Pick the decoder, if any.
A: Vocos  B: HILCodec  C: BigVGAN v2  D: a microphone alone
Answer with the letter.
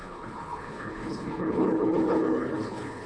B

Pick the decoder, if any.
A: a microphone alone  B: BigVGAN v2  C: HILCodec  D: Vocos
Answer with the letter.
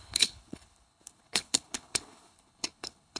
C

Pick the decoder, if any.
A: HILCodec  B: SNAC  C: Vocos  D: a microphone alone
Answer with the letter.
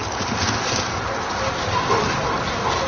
D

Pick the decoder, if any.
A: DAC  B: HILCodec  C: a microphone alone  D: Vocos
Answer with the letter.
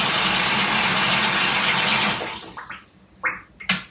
C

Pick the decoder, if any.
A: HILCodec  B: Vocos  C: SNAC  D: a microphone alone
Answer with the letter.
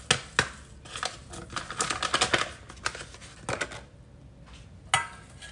D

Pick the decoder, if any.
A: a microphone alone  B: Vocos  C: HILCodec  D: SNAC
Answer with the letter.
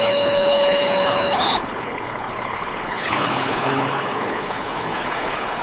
C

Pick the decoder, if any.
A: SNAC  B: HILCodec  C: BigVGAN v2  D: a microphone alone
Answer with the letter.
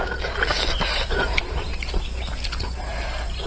D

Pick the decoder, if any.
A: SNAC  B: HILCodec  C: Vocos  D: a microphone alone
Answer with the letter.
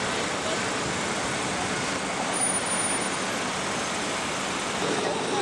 D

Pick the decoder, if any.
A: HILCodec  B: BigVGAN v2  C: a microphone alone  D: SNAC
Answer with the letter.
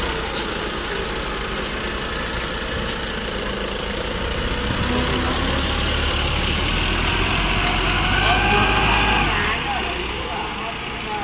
C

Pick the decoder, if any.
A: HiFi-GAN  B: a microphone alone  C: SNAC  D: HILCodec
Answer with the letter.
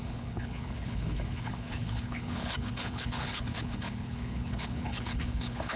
D